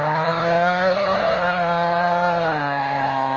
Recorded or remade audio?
remade